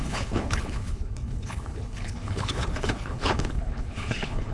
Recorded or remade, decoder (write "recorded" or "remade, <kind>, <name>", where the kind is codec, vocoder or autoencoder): remade, codec, HILCodec